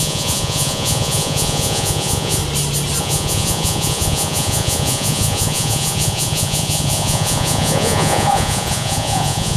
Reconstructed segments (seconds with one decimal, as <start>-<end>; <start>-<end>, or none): 0.0-2.4; 3.0-9.6